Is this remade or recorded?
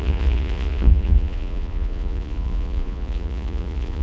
remade